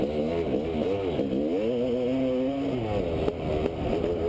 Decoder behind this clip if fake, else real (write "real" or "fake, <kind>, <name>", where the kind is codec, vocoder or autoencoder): real